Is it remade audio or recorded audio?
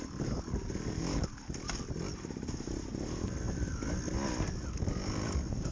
recorded